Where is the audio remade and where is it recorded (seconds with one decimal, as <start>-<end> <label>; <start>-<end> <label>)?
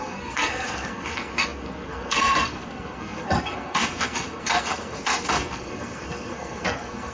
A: 0.0-7.1 remade